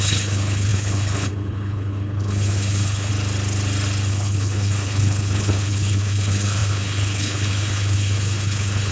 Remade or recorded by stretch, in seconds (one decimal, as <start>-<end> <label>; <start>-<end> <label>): 0.0-3.1 remade; 3.1-4.1 recorded; 4.1-8.9 remade